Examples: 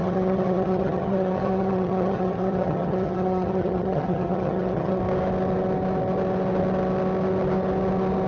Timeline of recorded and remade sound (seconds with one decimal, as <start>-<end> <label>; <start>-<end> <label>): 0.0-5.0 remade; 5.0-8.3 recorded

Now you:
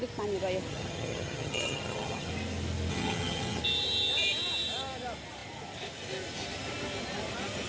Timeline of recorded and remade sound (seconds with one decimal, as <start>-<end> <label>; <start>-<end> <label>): 0.0-0.7 recorded; 0.7-2.3 remade; 2.3-2.9 recorded; 2.9-3.6 remade; 3.6-7.7 recorded

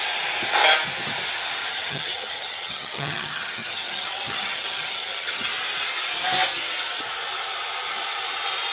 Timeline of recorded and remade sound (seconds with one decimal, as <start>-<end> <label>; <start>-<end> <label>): 0.0-1.6 recorded; 1.6-5.5 remade; 5.5-8.7 recorded